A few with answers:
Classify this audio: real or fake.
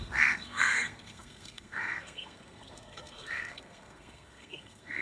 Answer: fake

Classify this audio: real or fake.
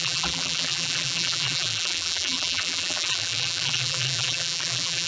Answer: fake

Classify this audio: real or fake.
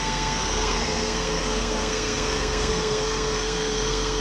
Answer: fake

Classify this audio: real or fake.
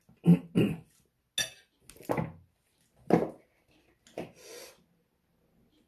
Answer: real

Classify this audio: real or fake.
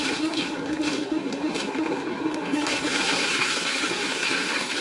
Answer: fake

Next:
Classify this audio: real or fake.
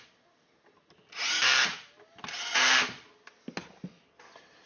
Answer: real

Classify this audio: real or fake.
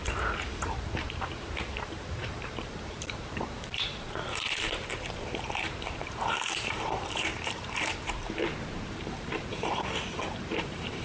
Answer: fake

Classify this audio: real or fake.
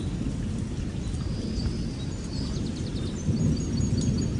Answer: real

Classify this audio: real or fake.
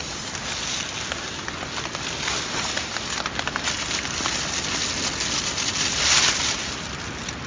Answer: real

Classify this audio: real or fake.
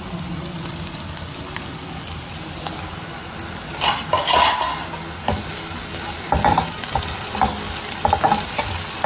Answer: real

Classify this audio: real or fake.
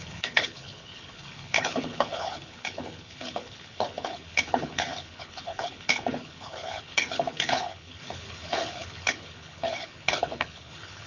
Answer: fake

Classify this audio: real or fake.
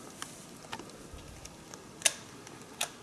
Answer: real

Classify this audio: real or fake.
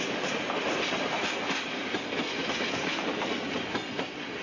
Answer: real